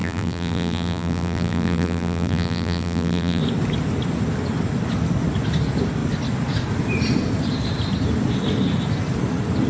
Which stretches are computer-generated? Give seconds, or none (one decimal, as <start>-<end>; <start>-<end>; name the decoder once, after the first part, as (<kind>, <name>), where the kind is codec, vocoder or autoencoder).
0.0-3.4 (vocoder, BigVGAN v2)